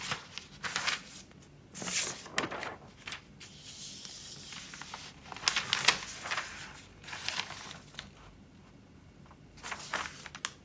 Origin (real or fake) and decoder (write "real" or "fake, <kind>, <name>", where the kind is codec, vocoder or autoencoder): real